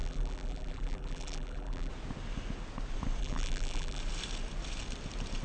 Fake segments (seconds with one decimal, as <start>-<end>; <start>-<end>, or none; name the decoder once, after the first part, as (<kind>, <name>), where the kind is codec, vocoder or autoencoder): 0.0-1.9 (vocoder, BigVGAN v2); 3.2-4.0